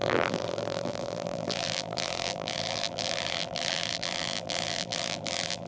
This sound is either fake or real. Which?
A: fake